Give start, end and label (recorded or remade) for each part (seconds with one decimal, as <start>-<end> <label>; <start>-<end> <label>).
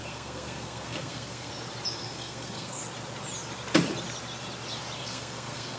0.0-1.5 remade; 1.5-2.0 recorded; 2.0-2.8 remade; 2.8-5.0 recorded; 5.0-5.8 remade